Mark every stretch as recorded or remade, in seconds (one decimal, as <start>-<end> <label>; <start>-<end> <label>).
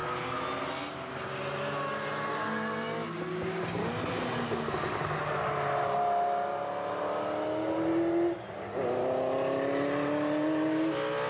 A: 0.0-11.3 recorded